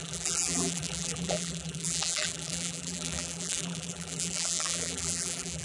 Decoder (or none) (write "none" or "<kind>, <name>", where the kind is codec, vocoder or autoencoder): vocoder, BigVGAN v2